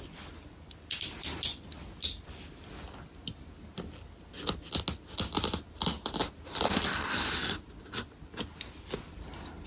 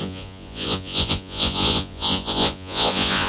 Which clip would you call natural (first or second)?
first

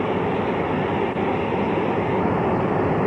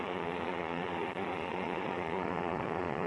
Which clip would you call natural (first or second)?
first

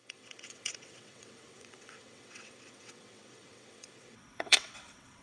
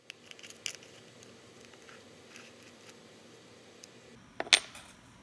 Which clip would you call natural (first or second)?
second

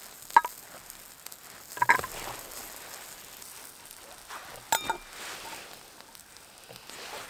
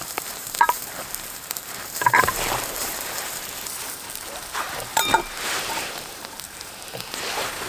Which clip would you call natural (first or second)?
first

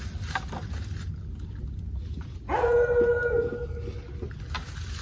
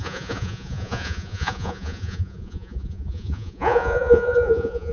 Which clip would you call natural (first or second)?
first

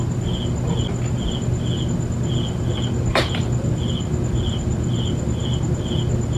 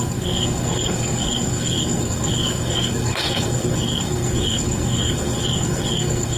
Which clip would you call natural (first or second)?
first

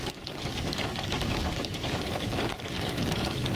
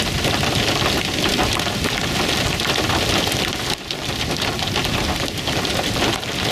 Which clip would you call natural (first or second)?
second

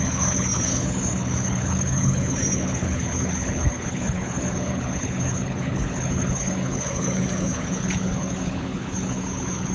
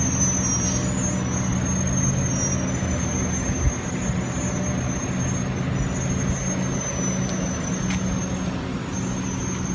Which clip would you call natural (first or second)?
second